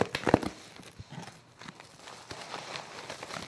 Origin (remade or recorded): recorded